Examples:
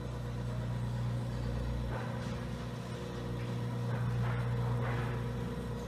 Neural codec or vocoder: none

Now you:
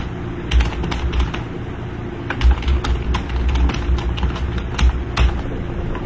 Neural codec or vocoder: none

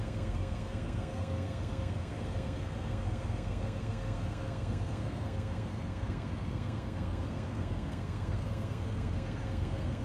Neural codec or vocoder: codec, SNAC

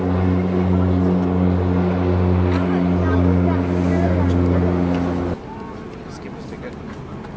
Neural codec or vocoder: none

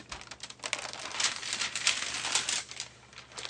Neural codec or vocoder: none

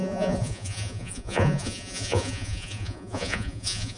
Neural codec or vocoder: vocoder, Vocos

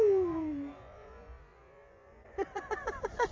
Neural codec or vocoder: vocoder, Vocos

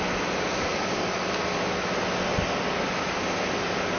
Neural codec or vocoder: none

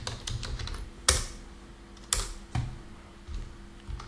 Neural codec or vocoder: none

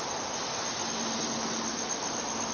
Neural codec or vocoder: none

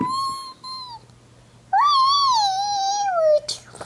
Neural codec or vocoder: none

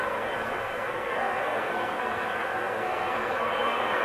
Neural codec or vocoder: codec, SNAC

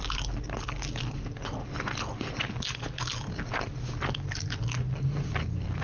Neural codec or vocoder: none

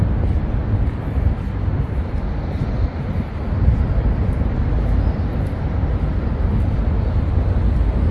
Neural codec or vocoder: none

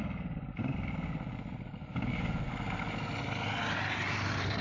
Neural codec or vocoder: none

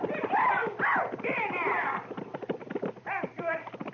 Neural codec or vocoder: vocoder, BigVGAN v2